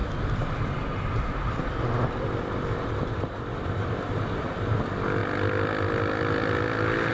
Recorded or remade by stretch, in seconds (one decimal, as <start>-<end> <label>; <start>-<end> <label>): 0.0-7.1 recorded